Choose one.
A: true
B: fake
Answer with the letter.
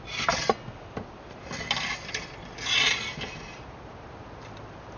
A